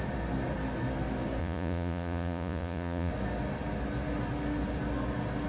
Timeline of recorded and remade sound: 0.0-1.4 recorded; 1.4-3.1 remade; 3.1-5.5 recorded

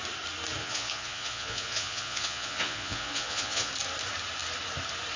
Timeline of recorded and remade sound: 0.0-0.6 recorded; 0.6-3.7 remade; 3.7-5.2 recorded